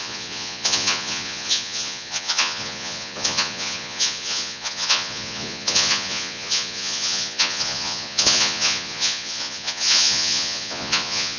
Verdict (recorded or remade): remade